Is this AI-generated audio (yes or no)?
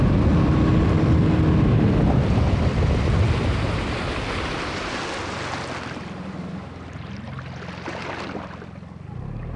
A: no